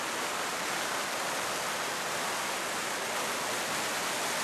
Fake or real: real